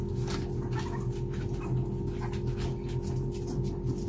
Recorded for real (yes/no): yes